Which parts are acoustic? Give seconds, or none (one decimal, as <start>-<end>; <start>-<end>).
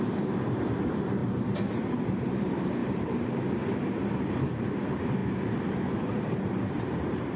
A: none